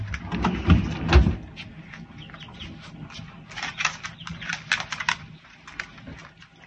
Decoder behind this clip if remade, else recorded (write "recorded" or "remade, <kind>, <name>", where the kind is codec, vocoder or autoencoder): recorded